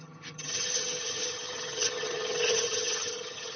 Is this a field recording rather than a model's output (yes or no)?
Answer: no